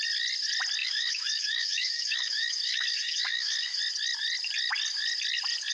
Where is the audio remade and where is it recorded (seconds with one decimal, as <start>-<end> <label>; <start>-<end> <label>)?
0.0-0.8 recorded; 0.8-3.8 remade; 3.8-5.7 recorded